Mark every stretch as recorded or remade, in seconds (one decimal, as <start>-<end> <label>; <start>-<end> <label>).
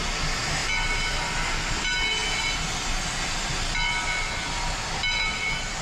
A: 0.0-5.8 recorded